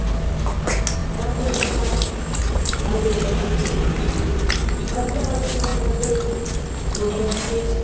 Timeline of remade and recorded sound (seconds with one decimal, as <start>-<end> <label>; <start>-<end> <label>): 0.0-7.8 recorded